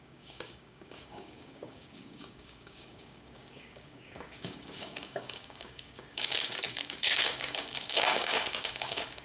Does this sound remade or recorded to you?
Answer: remade